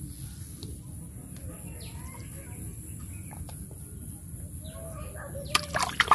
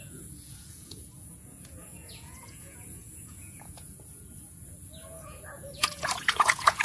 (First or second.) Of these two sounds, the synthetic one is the second